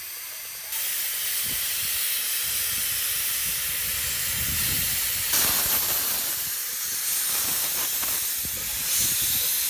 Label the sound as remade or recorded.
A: recorded